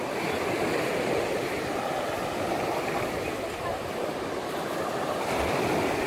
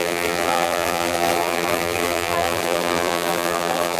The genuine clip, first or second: first